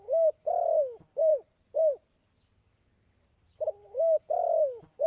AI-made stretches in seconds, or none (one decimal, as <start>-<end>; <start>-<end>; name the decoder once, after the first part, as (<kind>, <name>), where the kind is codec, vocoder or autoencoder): none